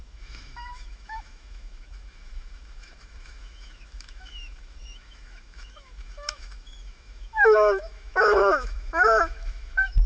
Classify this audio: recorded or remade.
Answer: remade